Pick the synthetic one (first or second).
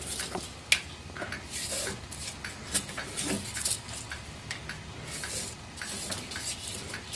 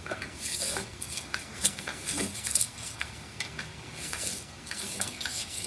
second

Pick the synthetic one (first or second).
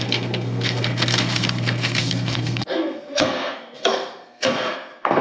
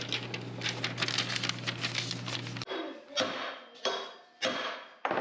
first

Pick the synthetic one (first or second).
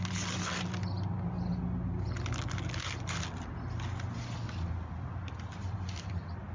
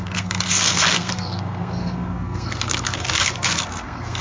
second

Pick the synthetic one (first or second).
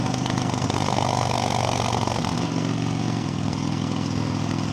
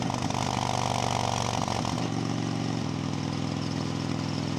first